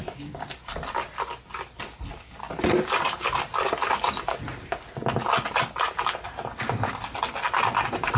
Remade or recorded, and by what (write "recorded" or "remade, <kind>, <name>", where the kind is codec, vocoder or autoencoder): recorded